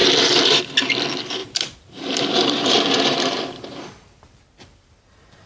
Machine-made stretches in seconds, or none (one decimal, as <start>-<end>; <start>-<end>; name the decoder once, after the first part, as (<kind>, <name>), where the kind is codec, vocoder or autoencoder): 0.0-0.6 (vocoder, BigVGAN v2); 1.4-4.4